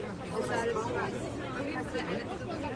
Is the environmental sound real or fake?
real